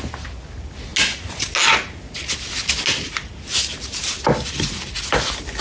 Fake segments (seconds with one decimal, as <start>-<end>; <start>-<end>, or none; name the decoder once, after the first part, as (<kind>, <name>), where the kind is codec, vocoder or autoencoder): none